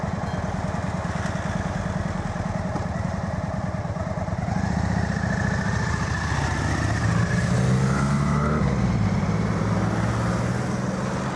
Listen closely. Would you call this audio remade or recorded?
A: recorded